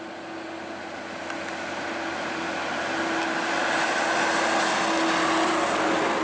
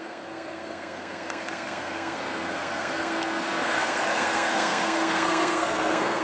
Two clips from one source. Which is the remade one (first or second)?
second